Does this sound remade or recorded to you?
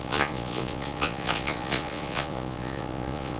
remade